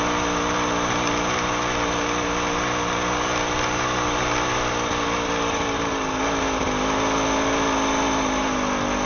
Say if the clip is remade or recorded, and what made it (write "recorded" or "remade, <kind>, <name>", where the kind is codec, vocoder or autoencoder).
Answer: recorded